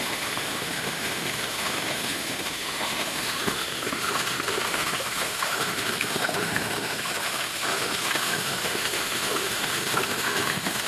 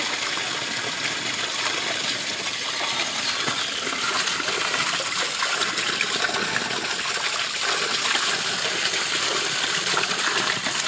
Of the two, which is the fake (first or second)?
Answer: first